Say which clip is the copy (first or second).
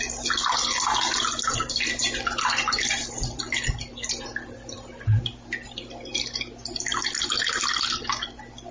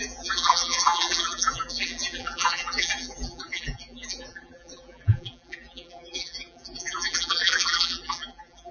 second